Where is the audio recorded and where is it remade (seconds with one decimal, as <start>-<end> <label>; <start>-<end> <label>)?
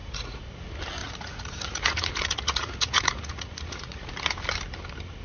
0.0-0.5 remade; 0.5-1.0 recorded; 1.0-4.1 remade; 4.1-5.2 recorded